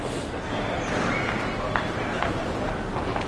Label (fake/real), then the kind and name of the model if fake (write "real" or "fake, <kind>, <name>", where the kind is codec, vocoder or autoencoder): real